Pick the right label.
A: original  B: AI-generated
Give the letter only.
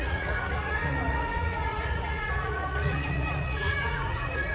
B